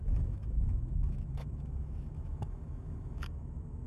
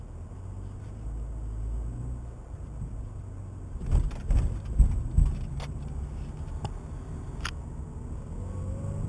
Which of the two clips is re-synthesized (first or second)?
first